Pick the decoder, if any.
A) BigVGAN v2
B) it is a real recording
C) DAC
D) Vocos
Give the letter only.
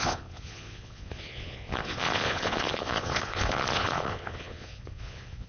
D